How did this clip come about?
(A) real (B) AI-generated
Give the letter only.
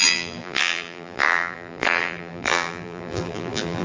B